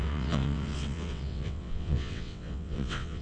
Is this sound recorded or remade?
remade